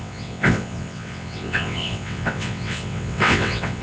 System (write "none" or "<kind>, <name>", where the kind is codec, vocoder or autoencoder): vocoder, WaveNeXt